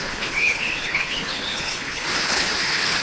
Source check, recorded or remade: remade